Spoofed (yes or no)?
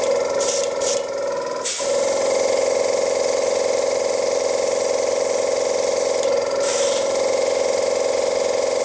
no